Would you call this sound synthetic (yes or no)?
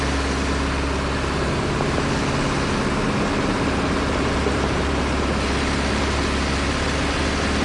no